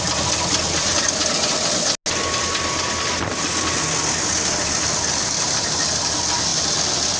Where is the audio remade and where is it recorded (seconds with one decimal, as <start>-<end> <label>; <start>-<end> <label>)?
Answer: 0.0-7.2 recorded